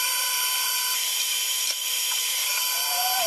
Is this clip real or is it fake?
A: fake